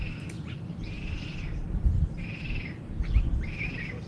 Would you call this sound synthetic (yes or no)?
yes